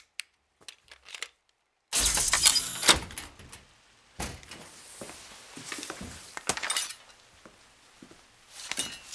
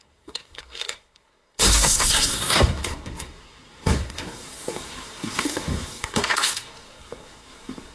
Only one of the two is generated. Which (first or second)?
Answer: second